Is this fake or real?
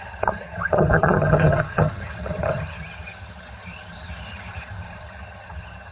fake